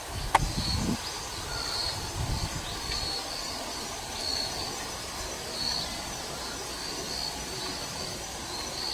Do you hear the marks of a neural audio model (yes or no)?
no